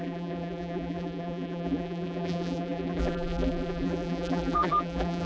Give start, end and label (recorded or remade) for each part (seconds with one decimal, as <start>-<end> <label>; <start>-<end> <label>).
0.0-5.3 remade